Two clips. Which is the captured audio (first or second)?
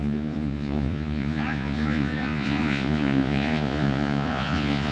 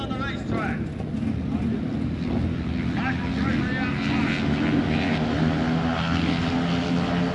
second